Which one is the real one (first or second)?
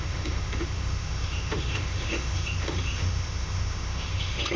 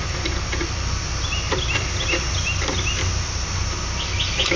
second